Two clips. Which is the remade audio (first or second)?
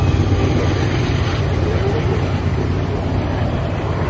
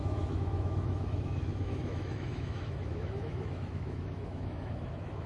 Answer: second